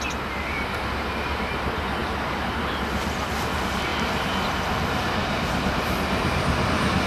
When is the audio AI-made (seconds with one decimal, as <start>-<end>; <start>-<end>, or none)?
none